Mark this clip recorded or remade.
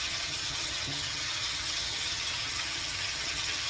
remade